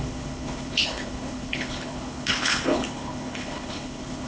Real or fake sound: fake